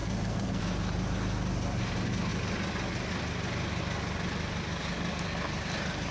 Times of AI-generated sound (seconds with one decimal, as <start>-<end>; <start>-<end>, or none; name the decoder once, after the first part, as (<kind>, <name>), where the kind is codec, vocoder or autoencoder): 0.0-0.6 (codec, SNAC)